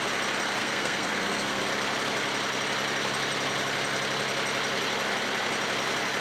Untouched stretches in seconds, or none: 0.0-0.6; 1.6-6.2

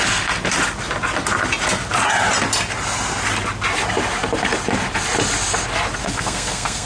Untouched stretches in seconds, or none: 0.0-6.0

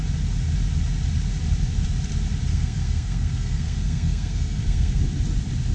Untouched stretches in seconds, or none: 0.0-2.5; 5.0-5.7

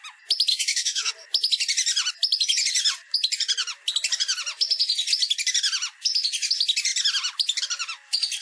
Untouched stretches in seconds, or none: 0.0-0.5; 1.1-8.4

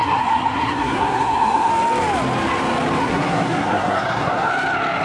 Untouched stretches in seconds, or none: 1.7-3.0; 4.5-5.0

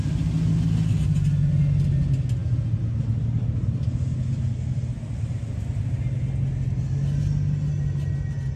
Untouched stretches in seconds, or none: 0.0-8.6